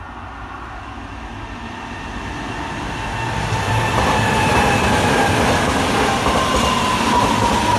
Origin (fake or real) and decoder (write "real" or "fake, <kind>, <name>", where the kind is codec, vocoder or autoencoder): real